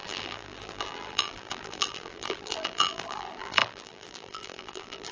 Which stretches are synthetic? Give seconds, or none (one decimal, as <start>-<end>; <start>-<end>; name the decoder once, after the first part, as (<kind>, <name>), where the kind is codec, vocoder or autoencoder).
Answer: 0.0-5.1 (vocoder, BigVGAN v2)